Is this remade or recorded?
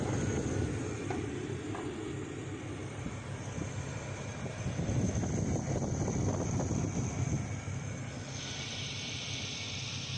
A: recorded